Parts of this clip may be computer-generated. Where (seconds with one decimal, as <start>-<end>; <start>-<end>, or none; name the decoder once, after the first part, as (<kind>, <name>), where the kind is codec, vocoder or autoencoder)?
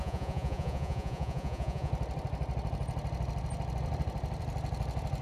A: 0.0-1.9 (vocoder, Vocos)